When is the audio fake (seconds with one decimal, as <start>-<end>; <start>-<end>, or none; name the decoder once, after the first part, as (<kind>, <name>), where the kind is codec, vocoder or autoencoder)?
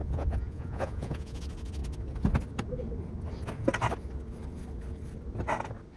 0.0-1.4 (vocoder, Vocos)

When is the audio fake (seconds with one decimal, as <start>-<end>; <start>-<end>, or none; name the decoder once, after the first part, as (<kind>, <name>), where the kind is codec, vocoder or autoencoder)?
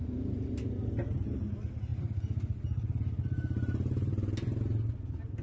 none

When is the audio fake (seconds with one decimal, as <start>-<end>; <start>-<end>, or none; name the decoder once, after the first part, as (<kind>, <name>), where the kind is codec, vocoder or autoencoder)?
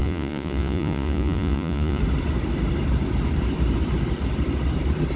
0.0-2.0 (vocoder, Vocos)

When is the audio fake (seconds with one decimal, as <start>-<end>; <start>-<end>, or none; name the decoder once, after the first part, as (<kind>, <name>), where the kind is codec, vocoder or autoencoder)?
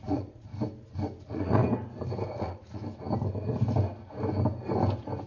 0.0-0.5 (vocoder, Vocos); 1.2-1.6; 2.4-2.8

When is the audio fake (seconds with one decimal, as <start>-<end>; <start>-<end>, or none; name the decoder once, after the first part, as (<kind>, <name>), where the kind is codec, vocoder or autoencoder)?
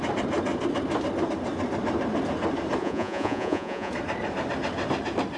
2.8-3.9 (vocoder, Vocos)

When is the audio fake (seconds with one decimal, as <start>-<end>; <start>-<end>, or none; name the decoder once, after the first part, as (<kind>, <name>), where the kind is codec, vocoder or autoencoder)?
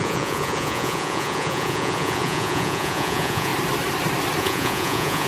0.0-3.5 (vocoder, Vocos); 4.4-5.3